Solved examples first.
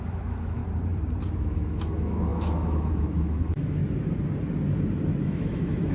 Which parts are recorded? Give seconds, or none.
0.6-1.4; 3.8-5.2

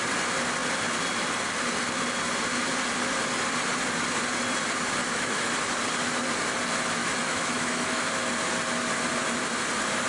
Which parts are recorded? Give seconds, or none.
0.0-5.0; 5.5-7.0; 8.1-10.1

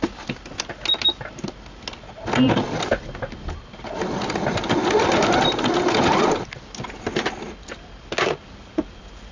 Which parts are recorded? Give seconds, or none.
0.0-9.3

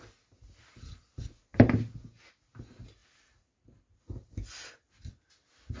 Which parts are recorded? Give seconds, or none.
0.0-5.8

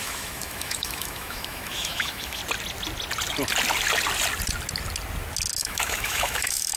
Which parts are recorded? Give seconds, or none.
2.4-5.6